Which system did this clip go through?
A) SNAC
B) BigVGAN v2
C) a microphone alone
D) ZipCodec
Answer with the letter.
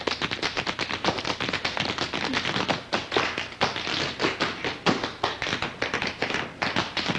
C